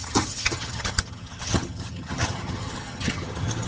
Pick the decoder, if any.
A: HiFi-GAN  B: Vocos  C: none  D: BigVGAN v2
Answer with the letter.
A